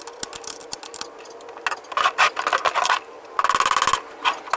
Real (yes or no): yes